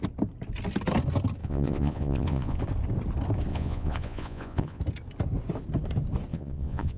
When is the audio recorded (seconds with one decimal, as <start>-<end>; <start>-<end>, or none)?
0.0-1.4; 2.6-3.5; 4.8-6.3